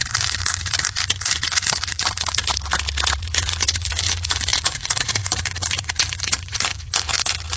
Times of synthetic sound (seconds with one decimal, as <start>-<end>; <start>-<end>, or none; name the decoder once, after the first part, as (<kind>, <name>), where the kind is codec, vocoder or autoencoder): 0.0-2.5 (vocoder, Vocos); 3.2-7.6